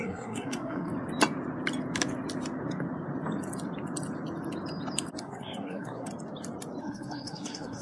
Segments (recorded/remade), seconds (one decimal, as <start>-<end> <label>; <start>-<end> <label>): 0.0-0.9 remade; 0.9-5.2 recorded; 5.2-6.1 remade; 6.1-6.8 recorded; 6.8-7.8 remade